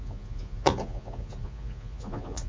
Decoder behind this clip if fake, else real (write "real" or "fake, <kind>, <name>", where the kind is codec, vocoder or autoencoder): fake, vocoder, Vocos